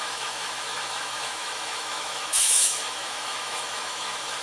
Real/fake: fake